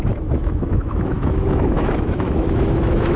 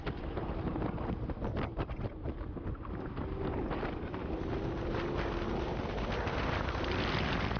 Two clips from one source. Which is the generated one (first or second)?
first